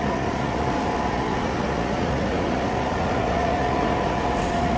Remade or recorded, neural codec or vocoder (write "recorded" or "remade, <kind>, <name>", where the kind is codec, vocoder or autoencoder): remade, vocoder, Vocos